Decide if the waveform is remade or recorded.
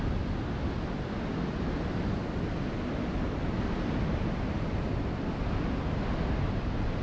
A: recorded